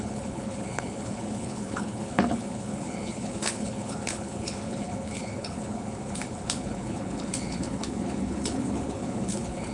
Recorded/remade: remade